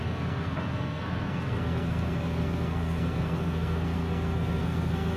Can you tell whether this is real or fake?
fake